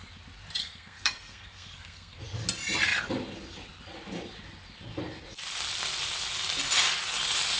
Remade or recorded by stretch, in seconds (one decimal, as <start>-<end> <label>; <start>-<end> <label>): 0.0-0.6 recorded; 0.6-2.2 remade; 2.2-7.6 recorded